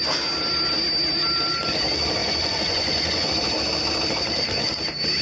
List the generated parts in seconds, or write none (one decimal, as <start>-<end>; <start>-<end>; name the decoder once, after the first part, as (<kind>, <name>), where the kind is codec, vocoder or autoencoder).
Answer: 2.2-3.3 (vocoder, Vocos)